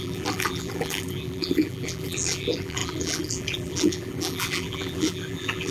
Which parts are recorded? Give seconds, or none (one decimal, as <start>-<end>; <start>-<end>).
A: none